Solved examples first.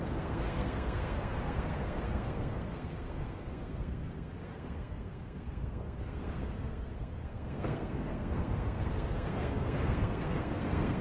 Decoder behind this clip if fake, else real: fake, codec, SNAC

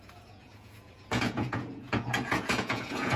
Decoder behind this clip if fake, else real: fake, vocoder, Vocos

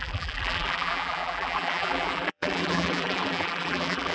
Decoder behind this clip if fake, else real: fake, vocoder, BigVGAN v2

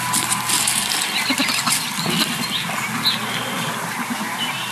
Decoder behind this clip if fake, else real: real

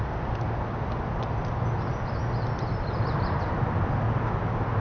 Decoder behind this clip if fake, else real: real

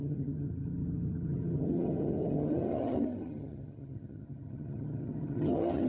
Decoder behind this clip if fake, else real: fake, vocoder, HiFi-GAN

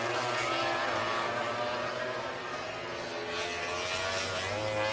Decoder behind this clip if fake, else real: real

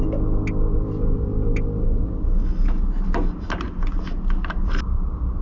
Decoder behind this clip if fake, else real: real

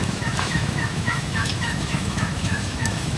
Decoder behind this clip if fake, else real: fake, autoencoder, DAC-VAE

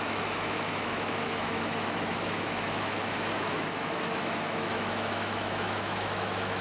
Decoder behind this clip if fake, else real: fake, autoencoder, DAC-VAE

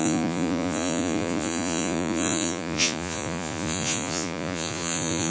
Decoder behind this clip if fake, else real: fake, vocoder, Vocos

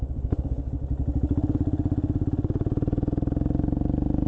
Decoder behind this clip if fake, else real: real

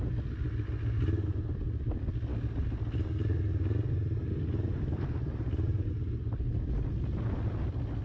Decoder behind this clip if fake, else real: real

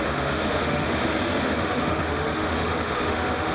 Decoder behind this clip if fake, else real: fake, autoencoder, DAC-VAE